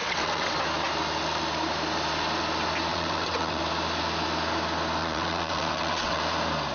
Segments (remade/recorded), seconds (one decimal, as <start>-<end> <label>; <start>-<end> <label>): 0.0-0.6 remade; 0.6-2.9 recorded; 2.9-3.6 remade; 3.6-5.0 recorded; 5.0-6.2 remade; 6.2-6.7 recorded